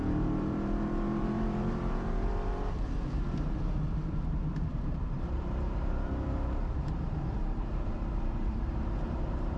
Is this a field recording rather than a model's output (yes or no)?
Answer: no